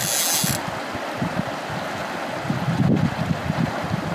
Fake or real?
real